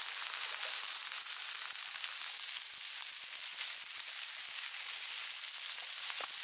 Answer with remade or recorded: recorded